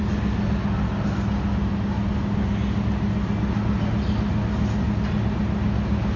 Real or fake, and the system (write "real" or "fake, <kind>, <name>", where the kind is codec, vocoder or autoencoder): real